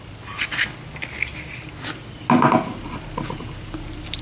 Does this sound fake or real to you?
real